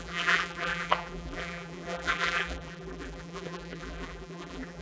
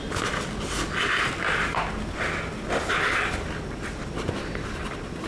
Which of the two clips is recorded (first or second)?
second